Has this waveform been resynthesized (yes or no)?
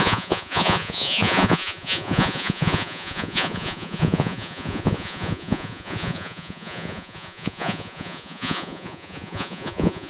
yes